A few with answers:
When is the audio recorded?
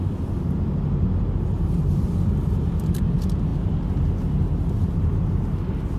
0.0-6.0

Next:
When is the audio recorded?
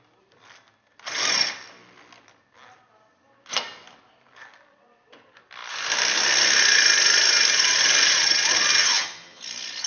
0.0-8.8; 9.4-9.9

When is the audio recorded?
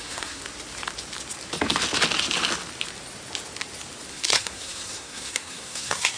0.4-4.1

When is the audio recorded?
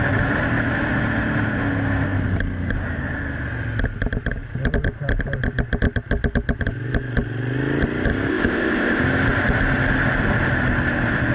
0.0-8.3; 9.0-11.3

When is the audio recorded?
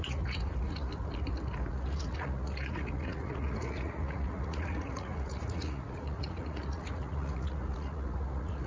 0.9-1.7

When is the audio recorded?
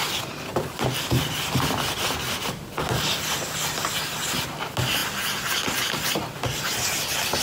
0.0-0.5; 2.7-7.4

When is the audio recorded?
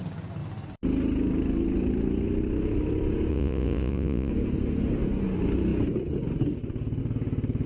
0.0-3.3; 4.3-7.7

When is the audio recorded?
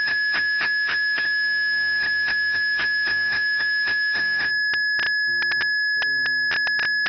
4.5-7.1